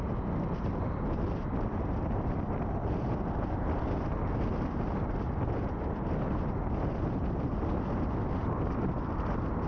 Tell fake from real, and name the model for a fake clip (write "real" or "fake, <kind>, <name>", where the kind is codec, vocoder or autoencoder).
real